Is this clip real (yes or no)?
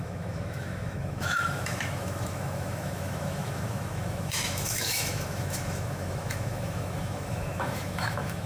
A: no